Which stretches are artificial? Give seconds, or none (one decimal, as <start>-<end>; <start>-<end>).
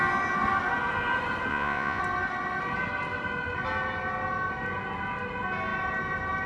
1.5-2.0